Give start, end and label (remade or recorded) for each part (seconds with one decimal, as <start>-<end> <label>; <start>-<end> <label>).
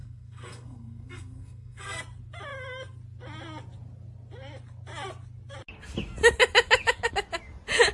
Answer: 0.0-2.0 remade; 2.0-7.9 recorded